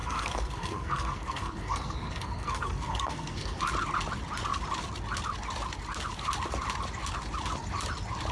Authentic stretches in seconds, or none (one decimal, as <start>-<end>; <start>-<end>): 3.6-8.3